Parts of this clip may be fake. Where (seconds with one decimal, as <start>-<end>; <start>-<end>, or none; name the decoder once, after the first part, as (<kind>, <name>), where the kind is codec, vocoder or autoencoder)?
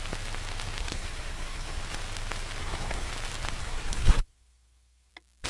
0.8-1.8 (codec, SNAC); 2.6-3.1; 3.6-5.1